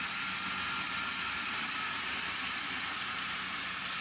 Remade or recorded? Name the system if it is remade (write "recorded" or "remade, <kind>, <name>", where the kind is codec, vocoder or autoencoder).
recorded